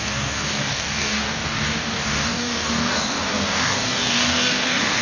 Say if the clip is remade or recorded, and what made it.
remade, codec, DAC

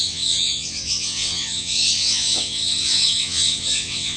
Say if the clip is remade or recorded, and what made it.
remade, vocoder, WaveNeXt